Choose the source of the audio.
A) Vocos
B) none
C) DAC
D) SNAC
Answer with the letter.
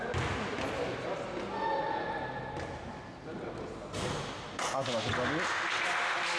B